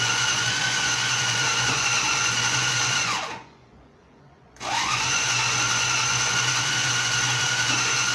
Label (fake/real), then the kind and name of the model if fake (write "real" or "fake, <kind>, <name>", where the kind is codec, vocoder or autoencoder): fake, vocoder, Vocos